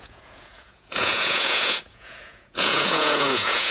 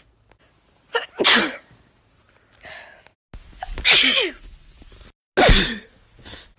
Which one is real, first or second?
second